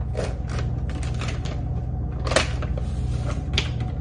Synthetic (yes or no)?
no